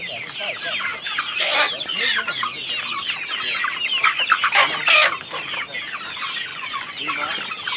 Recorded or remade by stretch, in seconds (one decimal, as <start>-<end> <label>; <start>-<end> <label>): 0.0-6.5 recorded; 6.5-7.0 remade; 7.0-7.8 recorded